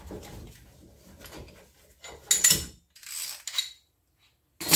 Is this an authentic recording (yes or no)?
yes